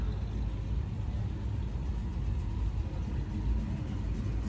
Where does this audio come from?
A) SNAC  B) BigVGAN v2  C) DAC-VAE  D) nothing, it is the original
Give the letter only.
D